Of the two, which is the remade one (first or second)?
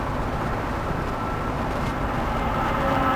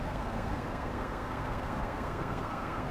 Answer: second